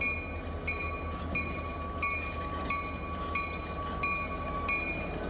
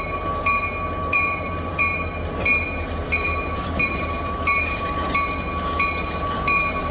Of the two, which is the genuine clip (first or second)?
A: first